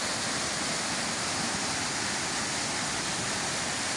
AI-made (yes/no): no